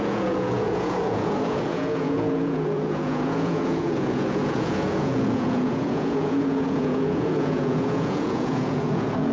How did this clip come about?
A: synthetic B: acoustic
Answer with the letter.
A